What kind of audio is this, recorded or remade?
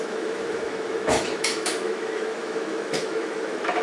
remade